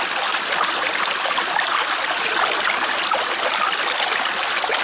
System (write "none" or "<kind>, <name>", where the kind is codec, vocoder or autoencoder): none